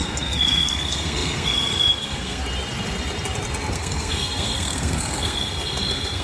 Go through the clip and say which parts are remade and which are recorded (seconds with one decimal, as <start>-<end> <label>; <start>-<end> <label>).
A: 0.0-2.4 remade; 2.4-3.7 recorded; 3.7-6.2 remade